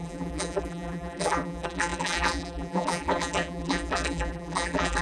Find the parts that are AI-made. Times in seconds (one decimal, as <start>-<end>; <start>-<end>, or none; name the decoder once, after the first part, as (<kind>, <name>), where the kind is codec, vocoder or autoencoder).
0.0-5.0 (vocoder, BigVGAN v2)